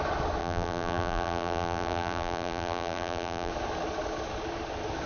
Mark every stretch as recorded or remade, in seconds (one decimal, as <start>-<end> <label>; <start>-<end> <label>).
0.0-0.4 recorded; 0.4-3.5 remade; 3.5-5.1 recorded